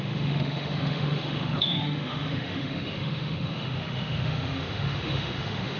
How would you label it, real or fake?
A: fake